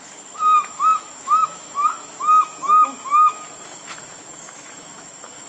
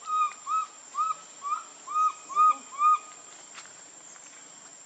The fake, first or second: first